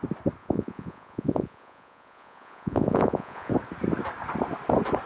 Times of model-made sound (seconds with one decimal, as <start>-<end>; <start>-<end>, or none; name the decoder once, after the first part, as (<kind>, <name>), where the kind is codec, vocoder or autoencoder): 0.4-3.5 (vocoder, Vocos)